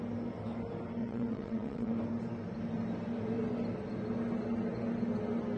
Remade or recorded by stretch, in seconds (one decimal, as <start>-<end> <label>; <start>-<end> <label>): 0.0-1.0 recorded; 1.0-1.9 remade; 1.9-5.6 recorded